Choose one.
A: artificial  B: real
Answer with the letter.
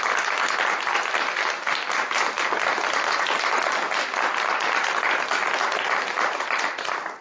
B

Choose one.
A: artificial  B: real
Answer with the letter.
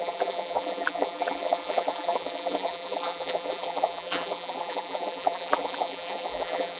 A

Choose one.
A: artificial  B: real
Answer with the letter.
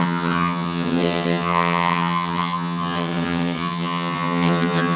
A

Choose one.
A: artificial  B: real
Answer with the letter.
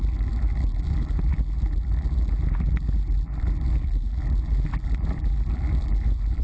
A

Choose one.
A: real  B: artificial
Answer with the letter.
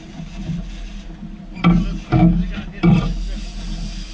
A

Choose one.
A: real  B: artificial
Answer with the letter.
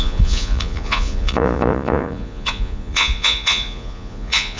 B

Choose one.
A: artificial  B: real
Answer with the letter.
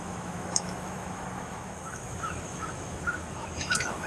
A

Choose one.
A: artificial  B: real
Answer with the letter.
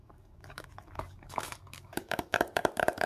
A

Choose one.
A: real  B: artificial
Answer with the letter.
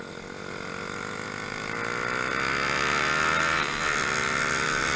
A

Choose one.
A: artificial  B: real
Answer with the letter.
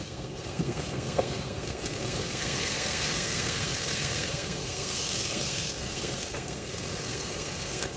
A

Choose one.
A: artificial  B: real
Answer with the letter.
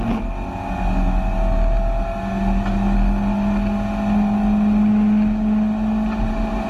B